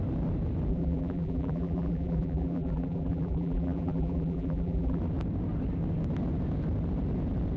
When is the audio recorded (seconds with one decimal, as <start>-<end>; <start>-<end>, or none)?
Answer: 0.0-0.7; 5.0-7.6